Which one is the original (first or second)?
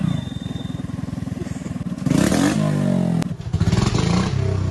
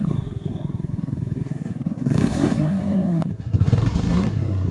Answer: first